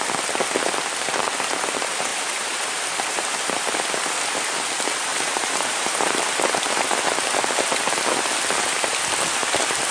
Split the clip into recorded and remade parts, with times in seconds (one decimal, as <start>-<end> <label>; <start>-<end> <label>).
0.0-2.1 recorded; 2.1-2.8 remade; 2.8-5.1 recorded; 5.1-6.3 remade; 6.3-9.9 recorded